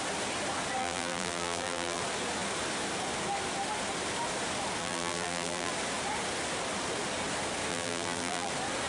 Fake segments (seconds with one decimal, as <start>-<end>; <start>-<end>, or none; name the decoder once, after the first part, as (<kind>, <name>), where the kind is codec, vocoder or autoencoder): 0.8-2.0 (vocoder, BigVGAN v2); 4.8-5.7; 7.7-8.5